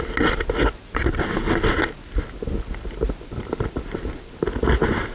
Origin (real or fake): real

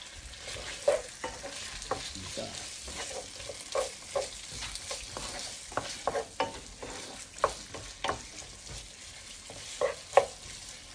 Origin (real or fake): real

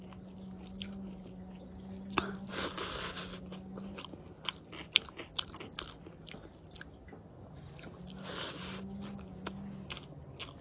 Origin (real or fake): real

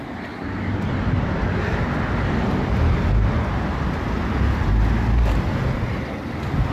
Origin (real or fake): real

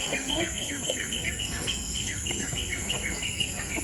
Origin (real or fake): fake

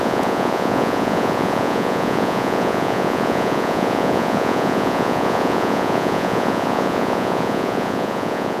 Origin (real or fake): fake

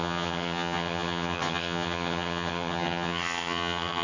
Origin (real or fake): fake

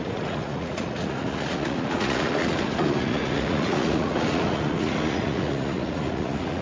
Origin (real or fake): fake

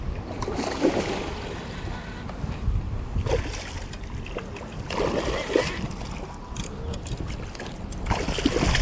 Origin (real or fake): real